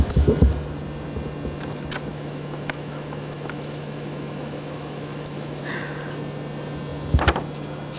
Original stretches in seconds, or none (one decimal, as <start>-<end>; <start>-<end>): 0.0-2.1; 5.6-8.0